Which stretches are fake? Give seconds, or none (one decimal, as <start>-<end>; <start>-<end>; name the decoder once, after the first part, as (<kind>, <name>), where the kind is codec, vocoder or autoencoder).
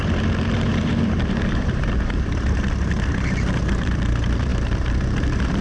0.0-5.6 (vocoder, BigVGAN v2)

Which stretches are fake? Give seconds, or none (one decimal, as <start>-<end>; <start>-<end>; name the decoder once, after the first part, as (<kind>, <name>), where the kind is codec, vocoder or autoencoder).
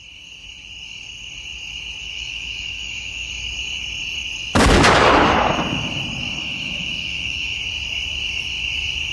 2.0-3.3 (autoencoder, DAC-VAE); 6.4-7.6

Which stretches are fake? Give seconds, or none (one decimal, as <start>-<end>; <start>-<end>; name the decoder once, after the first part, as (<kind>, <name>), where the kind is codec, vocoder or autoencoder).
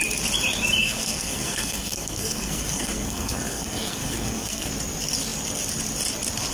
0.8-4.7 (codec, SNAC)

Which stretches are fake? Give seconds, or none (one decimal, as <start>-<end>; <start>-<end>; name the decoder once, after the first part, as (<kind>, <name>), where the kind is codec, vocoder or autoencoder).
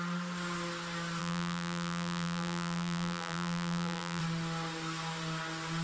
1.2-4.2 (vocoder, BigVGAN v2)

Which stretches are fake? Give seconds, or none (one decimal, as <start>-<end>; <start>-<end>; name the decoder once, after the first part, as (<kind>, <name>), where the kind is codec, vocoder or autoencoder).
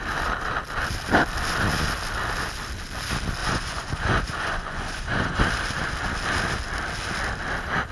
3.4-5.4 (vocoder, Vocos)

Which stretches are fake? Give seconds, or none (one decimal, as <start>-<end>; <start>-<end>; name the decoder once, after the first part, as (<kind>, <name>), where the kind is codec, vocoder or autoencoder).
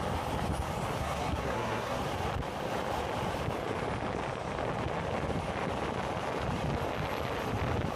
1.0-2.0 (codec, SNAC)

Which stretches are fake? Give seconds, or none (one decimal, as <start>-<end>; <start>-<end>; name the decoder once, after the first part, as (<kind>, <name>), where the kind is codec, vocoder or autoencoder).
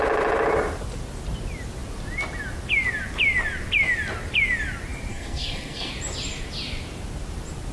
5.1-5.9 (codec, SNAC)